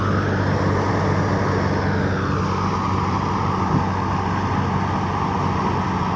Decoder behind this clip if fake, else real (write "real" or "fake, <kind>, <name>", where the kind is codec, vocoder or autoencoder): real